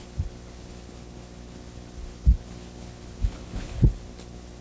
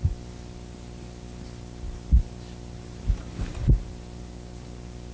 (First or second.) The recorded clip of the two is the second